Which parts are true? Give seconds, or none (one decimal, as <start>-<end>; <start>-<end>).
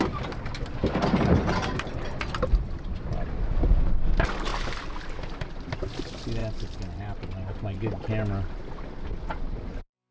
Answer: 0.0-10.1